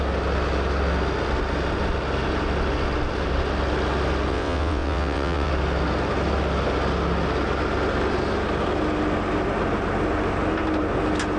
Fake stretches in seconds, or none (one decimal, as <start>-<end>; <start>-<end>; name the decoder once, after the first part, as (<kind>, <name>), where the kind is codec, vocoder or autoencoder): 4.3-5.5 (vocoder, WaveNeXt)

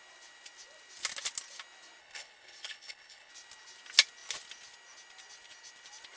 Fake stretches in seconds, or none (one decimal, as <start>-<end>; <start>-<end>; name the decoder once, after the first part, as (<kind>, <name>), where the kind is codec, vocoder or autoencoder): 2.0-3.3 (codec, HILCodec)

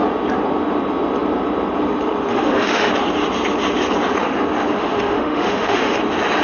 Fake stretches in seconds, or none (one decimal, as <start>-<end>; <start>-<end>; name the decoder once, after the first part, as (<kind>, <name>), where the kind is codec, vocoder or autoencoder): 2.3-2.9 (autoencoder, DAC-VAE); 4.7-6.0